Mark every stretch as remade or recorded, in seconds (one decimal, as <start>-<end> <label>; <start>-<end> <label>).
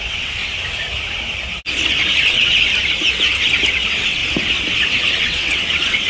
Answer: 0.0-0.4 remade; 0.4-2.3 recorded; 2.3-2.7 remade; 2.7-3.7 recorded; 3.7-4.2 remade; 4.2-5.2 recorded; 5.2-6.1 remade